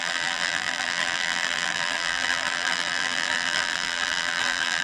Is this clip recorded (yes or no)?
no